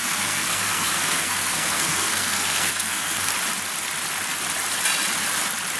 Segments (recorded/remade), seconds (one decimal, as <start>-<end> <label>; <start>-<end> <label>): 0.0-3.3 remade; 3.3-5.8 recorded